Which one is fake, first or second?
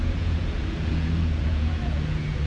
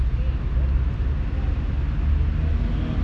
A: first